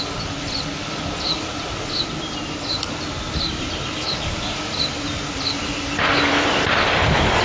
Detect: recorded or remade recorded